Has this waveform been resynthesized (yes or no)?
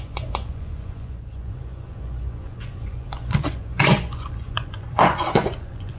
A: yes